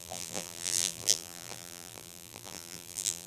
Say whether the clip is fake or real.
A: fake